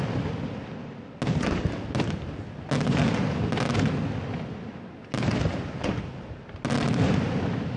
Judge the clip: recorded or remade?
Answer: recorded